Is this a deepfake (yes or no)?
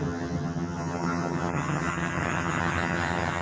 yes